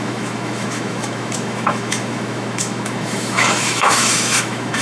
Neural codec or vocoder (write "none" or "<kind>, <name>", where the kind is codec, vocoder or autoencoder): autoencoder, DAC-VAE